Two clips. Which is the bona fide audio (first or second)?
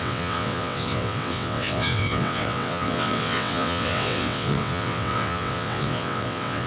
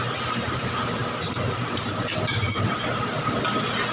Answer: second